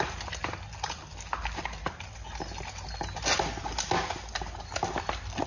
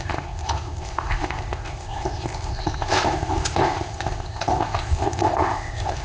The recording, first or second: first